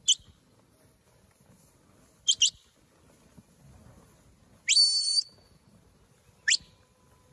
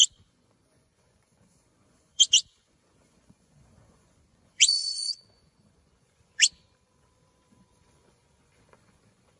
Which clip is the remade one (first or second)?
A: second